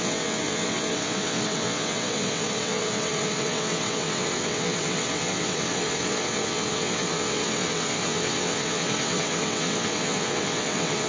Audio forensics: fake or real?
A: fake